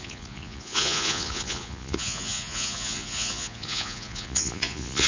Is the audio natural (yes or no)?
no